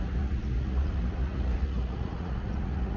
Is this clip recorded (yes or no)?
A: no